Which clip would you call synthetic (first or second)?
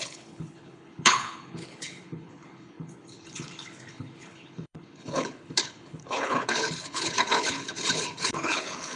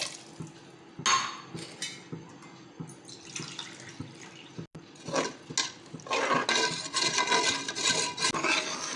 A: first